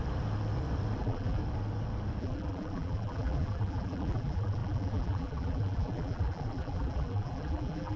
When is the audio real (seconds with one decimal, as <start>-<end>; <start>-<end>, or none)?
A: 0.0-1.0; 1.4-2.2